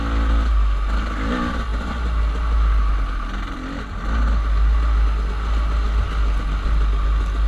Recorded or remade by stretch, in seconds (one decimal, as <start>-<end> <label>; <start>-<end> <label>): 0.0-7.5 recorded